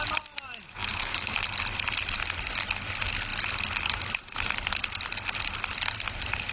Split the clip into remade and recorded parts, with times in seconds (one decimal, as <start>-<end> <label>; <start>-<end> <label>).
0.0-0.8 recorded; 0.8-1.4 remade; 1.4-6.5 recorded